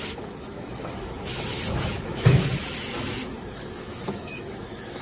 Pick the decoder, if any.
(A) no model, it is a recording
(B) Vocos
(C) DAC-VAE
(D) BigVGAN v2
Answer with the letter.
C